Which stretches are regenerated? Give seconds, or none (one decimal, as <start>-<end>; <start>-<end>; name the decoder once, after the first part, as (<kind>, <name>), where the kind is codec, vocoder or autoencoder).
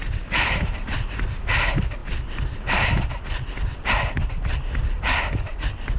none